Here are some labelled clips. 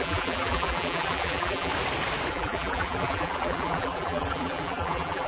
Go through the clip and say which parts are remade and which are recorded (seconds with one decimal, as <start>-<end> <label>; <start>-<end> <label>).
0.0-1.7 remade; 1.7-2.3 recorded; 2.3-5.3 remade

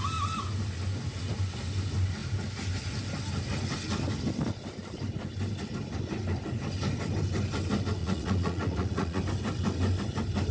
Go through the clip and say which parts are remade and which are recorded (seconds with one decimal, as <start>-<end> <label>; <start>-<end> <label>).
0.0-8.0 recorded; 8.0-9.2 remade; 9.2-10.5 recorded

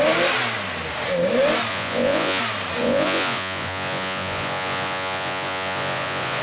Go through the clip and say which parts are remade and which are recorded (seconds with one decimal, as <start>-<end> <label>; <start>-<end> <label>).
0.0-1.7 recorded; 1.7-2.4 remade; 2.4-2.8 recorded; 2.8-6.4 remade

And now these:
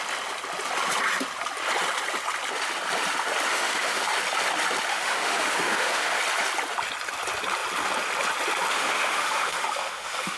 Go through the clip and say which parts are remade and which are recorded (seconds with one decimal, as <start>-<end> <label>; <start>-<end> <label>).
0.0-3.5 recorded; 3.5-4.0 remade; 4.0-4.9 recorded; 4.9-6.2 remade; 6.2-8.7 recorded; 8.7-10.4 remade

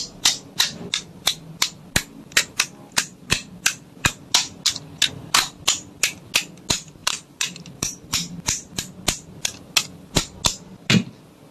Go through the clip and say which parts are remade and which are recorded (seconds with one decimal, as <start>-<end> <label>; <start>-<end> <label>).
0.0-7.0 recorded; 7.0-8.8 remade; 8.8-11.5 recorded

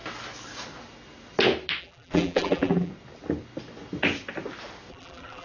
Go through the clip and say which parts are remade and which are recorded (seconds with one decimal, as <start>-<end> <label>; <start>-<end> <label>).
0.0-1.8 recorded; 1.8-2.9 remade; 2.9-4.9 recorded; 4.9-5.4 remade

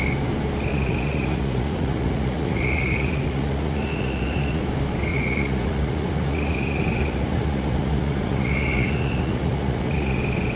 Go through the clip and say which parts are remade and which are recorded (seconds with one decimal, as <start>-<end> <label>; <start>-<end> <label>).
0.0-0.7 recorded; 0.7-4.6 remade; 4.6-5.1 recorded; 5.1-10.2 remade; 10.2-10.6 recorded

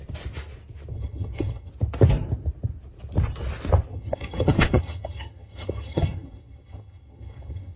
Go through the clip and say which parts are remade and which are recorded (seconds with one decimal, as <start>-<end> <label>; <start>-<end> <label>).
0.0-0.9 recorded; 0.9-1.7 remade; 1.7-3.9 recorded; 3.9-7.8 remade